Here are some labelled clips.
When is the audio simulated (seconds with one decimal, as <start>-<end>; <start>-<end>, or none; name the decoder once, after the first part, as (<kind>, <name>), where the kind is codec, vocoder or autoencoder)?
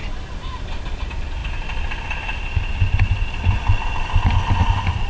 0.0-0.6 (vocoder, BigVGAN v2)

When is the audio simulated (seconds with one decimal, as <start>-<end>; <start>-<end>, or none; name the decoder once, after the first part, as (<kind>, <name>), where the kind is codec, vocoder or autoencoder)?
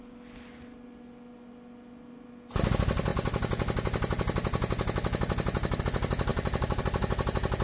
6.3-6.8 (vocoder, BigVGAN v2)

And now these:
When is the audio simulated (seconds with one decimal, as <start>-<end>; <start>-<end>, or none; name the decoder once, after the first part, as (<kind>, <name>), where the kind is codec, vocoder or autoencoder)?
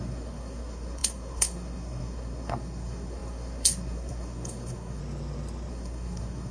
0.0-5.0 (codec, SNAC); 5.7-6.5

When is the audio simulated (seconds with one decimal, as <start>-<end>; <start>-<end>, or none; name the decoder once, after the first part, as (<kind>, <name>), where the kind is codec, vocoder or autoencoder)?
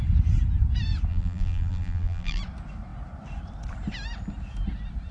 1.1-2.4 (vocoder, BigVGAN v2)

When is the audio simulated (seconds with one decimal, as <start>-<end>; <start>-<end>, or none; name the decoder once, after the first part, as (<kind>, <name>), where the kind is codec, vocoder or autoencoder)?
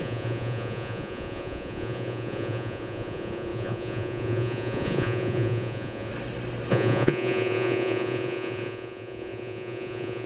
0.0-6.1 (vocoder, Vocos); 6.7-10.3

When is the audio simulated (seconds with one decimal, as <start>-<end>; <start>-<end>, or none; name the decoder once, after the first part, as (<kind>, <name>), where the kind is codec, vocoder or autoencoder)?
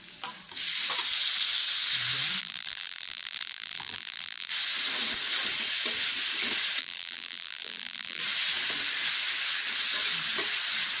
2.4-4.5 (vocoder, BigVGAN v2); 6.8-8.2